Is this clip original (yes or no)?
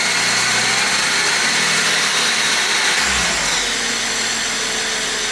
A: yes